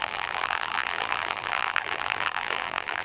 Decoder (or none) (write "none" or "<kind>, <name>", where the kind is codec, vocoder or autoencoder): vocoder, BigVGAN v2